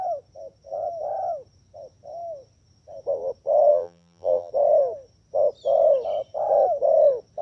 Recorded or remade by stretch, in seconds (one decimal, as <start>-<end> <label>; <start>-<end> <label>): 0.0-3.7 recorded; 3.7-4.5 remade; 4.5-7.4 recorded